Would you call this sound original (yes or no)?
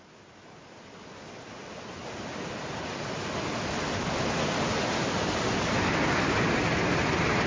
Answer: yes